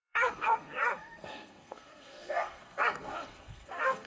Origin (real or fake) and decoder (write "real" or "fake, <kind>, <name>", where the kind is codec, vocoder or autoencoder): fake, codec, SNAC